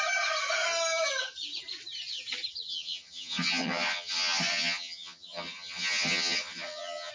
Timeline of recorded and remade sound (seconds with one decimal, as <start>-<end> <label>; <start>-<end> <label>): 0.0-2.7 recorded; 2.7-7.1 remade